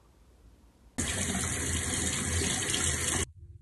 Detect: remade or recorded recorded